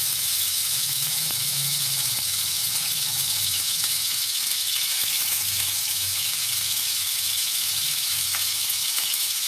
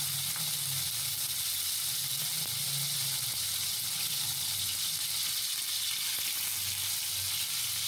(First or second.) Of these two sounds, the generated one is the first